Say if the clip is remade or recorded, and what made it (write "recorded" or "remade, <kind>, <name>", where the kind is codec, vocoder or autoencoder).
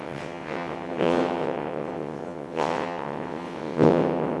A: remade, vocoder, WaveNeXt